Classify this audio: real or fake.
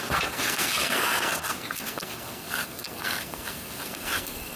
fake